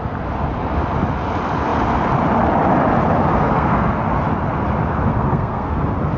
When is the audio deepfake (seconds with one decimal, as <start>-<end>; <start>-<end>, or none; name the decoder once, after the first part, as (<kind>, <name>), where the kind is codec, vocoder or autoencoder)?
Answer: 3.3-3.9 (codec, SNAC); 5.1-5.8